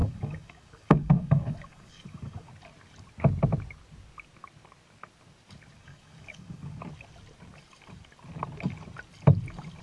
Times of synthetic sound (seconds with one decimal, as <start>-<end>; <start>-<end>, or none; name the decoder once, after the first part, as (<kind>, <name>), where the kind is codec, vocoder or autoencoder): 0.0-2.5 (codec, DAC); 5.8-6.8